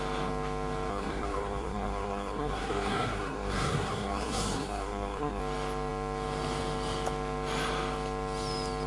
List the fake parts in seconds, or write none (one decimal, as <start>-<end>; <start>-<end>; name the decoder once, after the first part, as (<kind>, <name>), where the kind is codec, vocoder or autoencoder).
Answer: 0.9-5.4 (codec, SNAC)